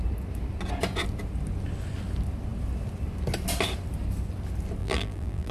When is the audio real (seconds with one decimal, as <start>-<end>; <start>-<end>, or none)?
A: 0.0-4.8